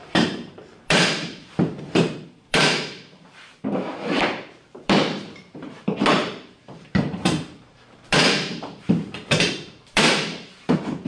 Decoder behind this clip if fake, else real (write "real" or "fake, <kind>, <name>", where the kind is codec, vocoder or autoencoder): fake, vocoder, BigVGAN v2